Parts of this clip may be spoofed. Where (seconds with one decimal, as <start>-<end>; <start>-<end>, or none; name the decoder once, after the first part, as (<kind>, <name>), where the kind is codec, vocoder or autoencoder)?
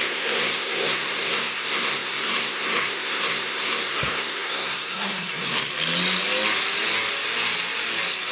0.0-5.7 (codec, SNAC)